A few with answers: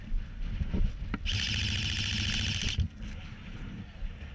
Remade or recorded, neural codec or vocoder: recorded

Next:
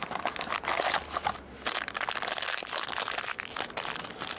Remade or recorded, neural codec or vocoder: recorded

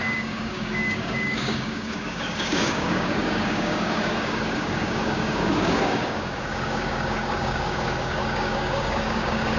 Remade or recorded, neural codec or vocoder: remade, codec, DAC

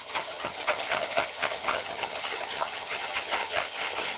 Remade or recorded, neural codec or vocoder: remade, vocoder, HiFi-GAN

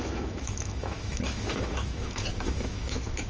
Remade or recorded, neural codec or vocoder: remade, autoencoder, DAC-VAE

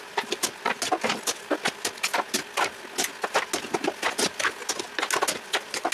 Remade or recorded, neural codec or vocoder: recorded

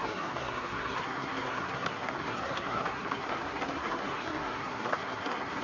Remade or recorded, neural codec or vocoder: remade, codec, SNAC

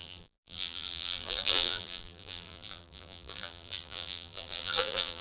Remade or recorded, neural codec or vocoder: remade, vocoder, BigVGAN v2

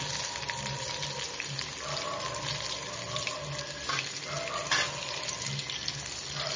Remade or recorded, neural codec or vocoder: recorded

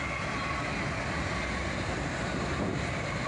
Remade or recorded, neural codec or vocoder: recorded